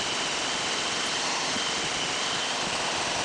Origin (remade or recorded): recorded